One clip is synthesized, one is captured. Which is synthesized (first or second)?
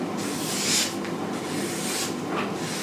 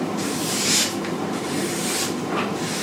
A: second